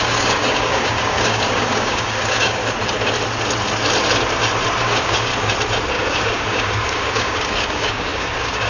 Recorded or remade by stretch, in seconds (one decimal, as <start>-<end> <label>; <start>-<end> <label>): 0.0-2.6 remade; 2.6-4.8 recorded; 4.8-5.3 remade; 5.3-5.9 recorded; 5.9-8.7 remade